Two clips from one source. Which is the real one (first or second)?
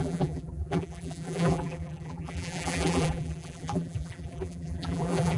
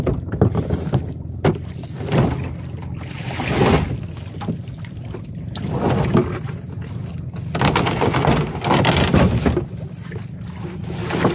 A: second